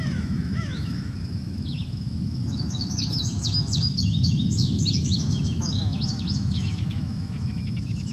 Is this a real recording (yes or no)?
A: no